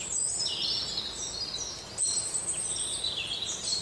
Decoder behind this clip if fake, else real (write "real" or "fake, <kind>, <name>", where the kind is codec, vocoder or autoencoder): real